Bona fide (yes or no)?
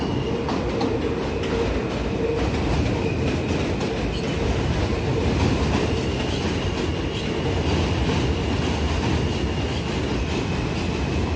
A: yes